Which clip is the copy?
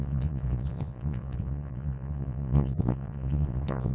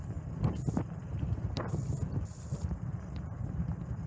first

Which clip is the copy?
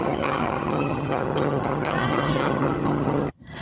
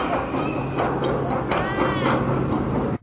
first